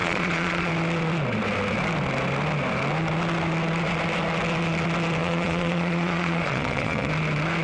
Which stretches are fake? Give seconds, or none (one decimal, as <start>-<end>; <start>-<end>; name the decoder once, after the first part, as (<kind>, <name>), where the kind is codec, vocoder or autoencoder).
0.0-0.7 (vocoder, Vocos); 5.2-7.1